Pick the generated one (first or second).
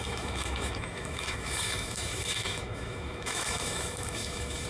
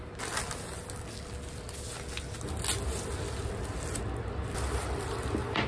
first